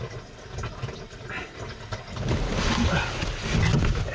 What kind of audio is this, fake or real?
real